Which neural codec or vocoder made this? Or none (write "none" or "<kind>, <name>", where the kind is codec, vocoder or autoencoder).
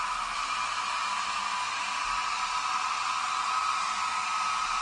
none